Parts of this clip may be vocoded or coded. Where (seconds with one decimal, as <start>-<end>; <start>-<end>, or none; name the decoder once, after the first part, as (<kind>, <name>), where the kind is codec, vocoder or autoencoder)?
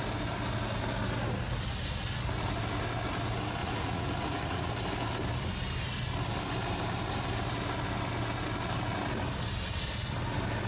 3.6-4.7 (vocoder, Vocos)